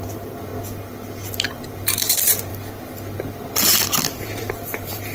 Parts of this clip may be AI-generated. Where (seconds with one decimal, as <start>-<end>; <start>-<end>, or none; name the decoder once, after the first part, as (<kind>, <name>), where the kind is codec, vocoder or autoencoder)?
0.0-0.5 (vocoder, BigVGAN v2); 1.5-2.5; 4.0-5.1